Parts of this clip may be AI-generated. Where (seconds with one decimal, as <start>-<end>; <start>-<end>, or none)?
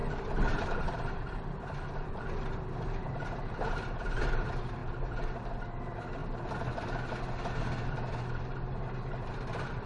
0.0-6.2; 7.9-9.9